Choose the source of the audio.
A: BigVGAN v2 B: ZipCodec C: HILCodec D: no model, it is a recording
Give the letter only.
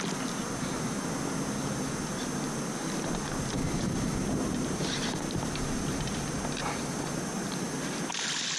D